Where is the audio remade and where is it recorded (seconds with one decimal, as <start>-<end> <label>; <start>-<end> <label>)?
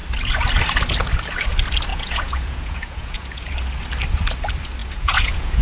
0.0-1.9 recorded; 1.9-3.5 remade; 3.5-4.8 recorded; 4.8-5.6 remade